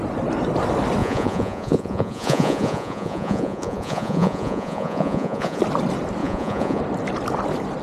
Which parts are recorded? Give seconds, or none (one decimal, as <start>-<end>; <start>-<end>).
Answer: 0.0-1.0; 5.6-6.2; 6.8-7.8

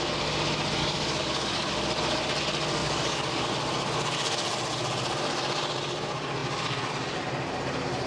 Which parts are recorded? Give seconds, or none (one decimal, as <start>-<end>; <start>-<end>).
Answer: 0.0-0.8; 1.7-2.8; 3.5-8.1

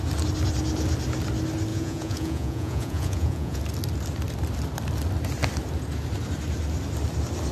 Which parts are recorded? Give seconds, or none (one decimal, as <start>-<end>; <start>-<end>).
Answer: 0.0-1.7; 3.6-7.5

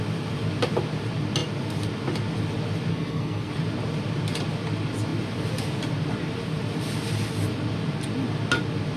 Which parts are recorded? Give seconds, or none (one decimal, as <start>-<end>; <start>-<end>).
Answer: 0.0-2.9; 3.5-9.0

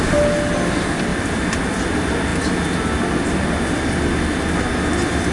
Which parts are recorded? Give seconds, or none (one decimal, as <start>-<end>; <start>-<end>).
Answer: 0.0-5.3